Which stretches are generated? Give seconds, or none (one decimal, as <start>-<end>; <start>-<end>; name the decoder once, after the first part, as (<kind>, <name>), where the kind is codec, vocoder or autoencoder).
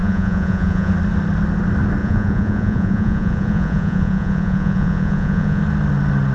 0.0-0.9 (vocoder, Vocos); 2.0-5.6